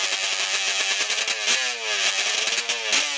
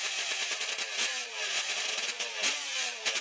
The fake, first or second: second